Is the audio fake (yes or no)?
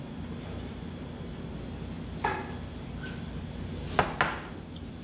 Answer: no